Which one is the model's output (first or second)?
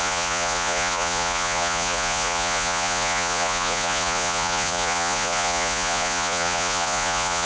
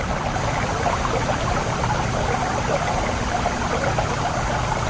first